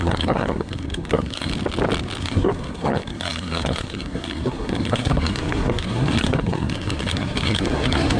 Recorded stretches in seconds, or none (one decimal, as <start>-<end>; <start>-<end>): 1.5-2.2